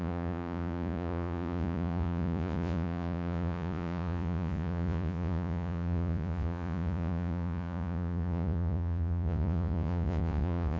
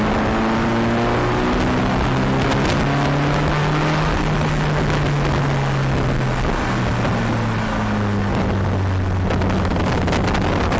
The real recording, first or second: second